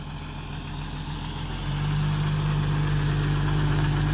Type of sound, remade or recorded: recorded